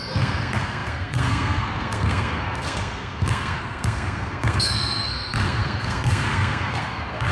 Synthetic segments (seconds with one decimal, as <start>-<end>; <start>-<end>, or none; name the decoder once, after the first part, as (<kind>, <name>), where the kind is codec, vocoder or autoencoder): 0.0-7.3 (codec, SNAC)